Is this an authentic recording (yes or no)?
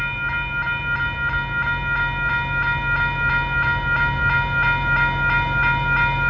yes